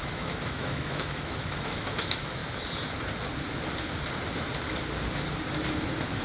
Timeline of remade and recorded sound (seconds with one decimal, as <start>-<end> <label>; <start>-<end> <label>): 0.0-2.4 remade; 2.4-6.2 recorded